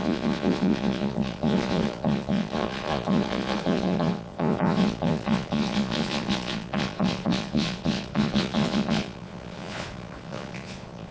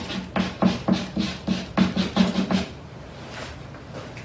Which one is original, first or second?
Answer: second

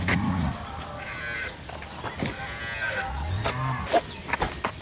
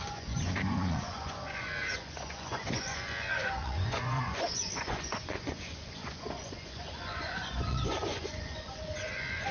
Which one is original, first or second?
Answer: first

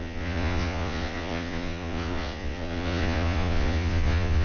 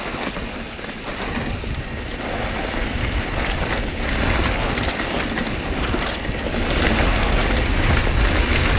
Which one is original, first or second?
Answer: second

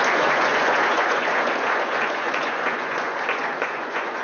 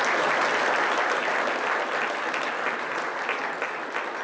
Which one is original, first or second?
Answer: second